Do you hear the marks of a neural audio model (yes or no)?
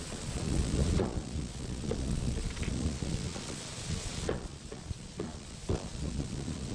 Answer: yes